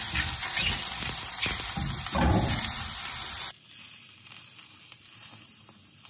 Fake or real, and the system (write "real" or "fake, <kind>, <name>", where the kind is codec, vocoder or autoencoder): fake, vocoder, BigVGAN v2